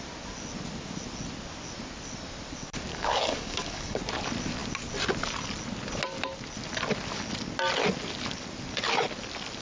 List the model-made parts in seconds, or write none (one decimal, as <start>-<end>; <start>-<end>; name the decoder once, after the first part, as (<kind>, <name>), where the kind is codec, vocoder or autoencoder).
2.9-4.0 (codec, DAC)